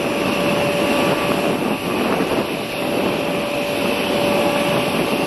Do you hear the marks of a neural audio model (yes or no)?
no